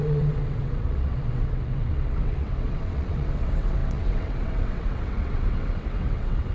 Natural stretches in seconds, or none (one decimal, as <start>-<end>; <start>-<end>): none